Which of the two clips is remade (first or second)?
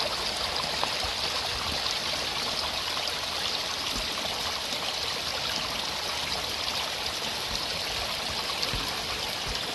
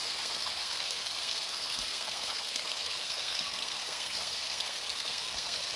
second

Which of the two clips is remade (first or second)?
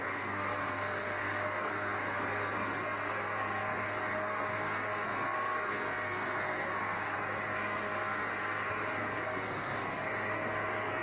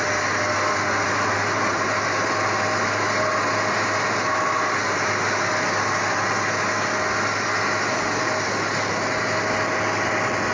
first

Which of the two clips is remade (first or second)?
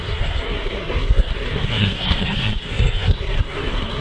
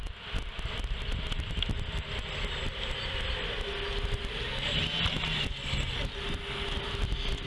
first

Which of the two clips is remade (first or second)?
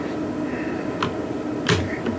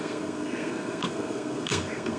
second